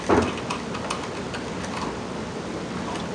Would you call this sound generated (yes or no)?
no